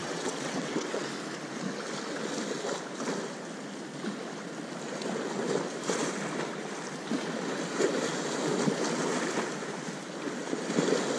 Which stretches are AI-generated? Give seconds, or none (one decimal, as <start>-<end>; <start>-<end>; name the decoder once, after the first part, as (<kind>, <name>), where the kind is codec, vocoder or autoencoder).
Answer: 0.0-1.1 (vocoder, WaveNeXt)